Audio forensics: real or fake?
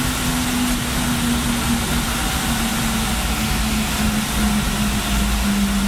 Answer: real